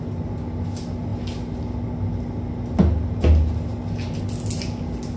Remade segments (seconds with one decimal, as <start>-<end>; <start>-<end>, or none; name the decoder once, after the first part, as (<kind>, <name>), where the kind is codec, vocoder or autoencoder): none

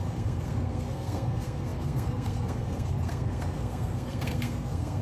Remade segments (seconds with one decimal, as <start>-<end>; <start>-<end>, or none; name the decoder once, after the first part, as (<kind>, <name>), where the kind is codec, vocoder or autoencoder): 0.0-5.0 (codec, SNAC)

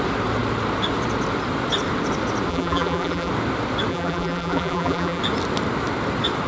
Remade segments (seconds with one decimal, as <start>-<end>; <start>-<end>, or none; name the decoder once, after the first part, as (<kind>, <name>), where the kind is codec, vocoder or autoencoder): 2.5-3.3 (vocoder, BigVGAN v2); 3.9-5.2

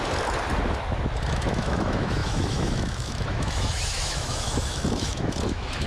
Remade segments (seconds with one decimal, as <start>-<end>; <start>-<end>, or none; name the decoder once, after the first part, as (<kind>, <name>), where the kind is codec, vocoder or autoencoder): 1.3-5.9 (autoencoder, DAC-VAE)

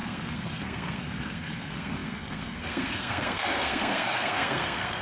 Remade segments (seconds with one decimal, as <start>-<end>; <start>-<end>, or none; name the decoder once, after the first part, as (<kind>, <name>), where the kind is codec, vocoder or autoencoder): 0.0-5.0 (codec, SNAC)

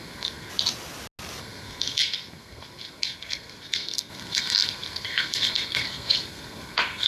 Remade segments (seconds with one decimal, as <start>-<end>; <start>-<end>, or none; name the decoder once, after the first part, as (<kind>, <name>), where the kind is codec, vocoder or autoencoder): 0.0-0.5 (codec, SNAC); 1.4-7.1

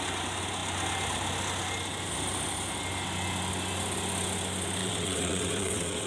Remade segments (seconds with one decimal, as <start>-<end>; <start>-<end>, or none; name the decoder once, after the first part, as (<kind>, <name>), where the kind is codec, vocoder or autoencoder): 4.8-6.1 (vocoder, WaveNeXt)